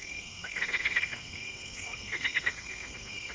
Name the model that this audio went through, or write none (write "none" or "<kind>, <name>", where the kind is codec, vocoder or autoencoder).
codec, SNAC